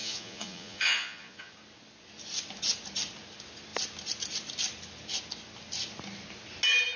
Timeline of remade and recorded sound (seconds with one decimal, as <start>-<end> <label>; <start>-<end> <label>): 0.0-1.5 remade; 1.5-7.0 recorded

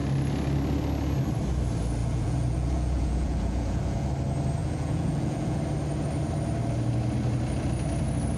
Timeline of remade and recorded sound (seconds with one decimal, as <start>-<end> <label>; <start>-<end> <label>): 0.0-2.0 recorded; 2.0-4.1 remade; 4.1-4.6 recorded; 4.6-5.6 remade; 5.6-8.4 recorded

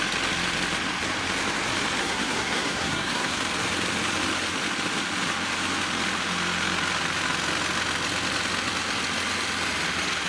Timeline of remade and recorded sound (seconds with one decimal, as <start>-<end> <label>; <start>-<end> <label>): 0.0-2.0 recorded; 2.0-3.4 remade; 3.4-10.3 recorded

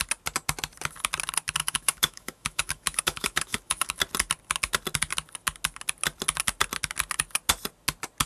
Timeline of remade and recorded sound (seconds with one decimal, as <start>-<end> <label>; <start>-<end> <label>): 0.0-1.6 recorded; 1.6-4.0 remade; 4.0-8.3 recorded

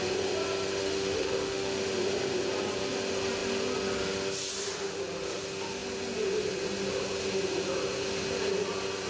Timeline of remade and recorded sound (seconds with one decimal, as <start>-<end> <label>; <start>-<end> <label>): 0.0-0.8 recorded; 0.8-1.8 remade; 1.8-9.1 recorded

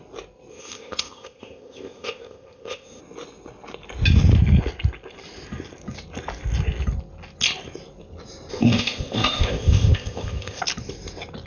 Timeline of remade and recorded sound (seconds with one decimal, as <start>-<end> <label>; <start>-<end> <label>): 0.0-0.5 recorded; 0.5-3.0 remade; 3.0-8.5 recorded; 8.5-10.6 remade; 10.6-11.5 recorded

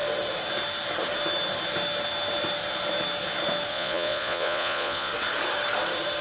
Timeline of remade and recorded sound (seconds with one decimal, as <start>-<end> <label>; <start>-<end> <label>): 0.0-3.7 recorded; 3.7-5.1 remade; 5.1-6.2 recorded

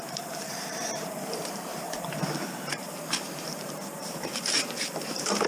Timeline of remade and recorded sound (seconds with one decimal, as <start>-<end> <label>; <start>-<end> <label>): 0.0-5.5 remade